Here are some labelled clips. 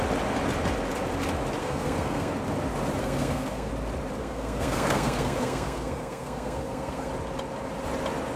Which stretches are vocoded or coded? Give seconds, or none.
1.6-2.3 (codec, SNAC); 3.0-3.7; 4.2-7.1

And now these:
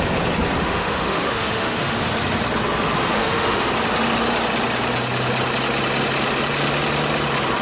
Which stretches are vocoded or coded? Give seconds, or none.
0.6-2.0 (autoencoder, DAC-VAE); 3.0-3.7

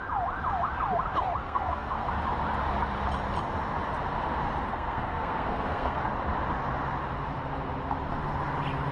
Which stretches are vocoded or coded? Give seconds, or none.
1.4-2.1 (codec, SNAC); 4.7-6.0

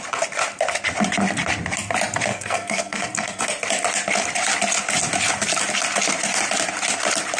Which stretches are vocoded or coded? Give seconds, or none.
2.3-3.4 (codec, SNAC)

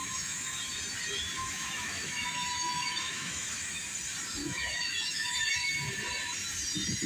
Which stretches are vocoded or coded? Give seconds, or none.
0.0-0.6 (autoencoder, DAC-VAE); 1.4-3.8; 4.4-5.7